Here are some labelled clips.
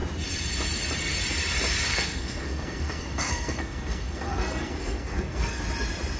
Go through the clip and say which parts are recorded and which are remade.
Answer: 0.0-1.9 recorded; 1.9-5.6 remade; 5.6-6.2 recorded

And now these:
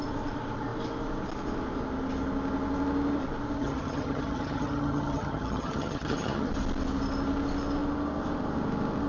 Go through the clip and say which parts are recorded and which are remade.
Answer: 0.0-3.6 recorded; 3.6-6.5 remade; 6.5-9.1 recorded

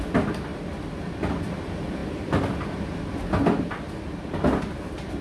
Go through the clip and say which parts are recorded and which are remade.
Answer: 0.0-5.2 recorded

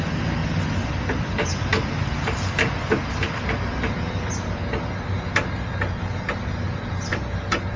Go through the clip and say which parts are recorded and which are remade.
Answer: 0.0-7.8 recorded

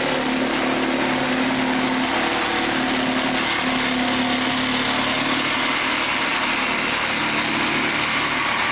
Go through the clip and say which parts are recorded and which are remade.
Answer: 0.0-8.7 recorded

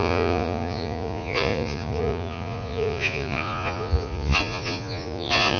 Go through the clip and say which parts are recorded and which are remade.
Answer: 0.0-5.6 remade

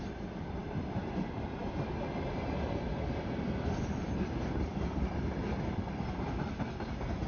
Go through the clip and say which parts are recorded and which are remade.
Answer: 0.0-7.3 recorded